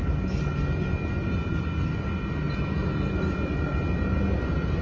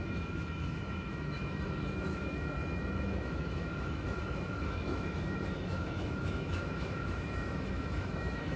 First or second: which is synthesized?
second